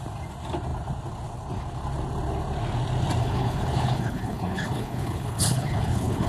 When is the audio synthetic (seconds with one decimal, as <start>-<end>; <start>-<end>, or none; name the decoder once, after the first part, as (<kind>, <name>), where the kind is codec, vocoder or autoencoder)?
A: 3.2-6.3 (codec, HILCodec)